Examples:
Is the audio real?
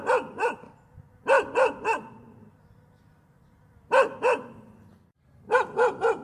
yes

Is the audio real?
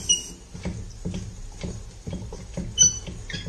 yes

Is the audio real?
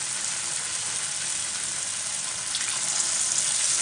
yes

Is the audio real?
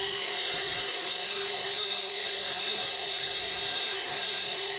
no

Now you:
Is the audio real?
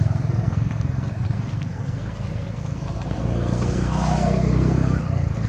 no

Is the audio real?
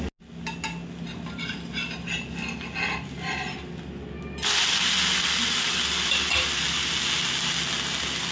yes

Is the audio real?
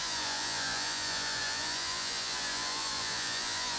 no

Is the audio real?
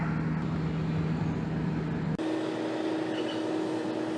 yes